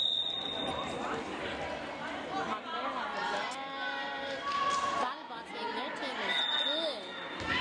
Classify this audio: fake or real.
real